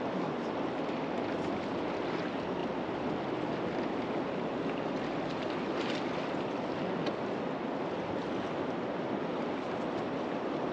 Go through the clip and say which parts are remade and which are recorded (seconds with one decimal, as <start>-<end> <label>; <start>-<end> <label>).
0.0-10.7 recorded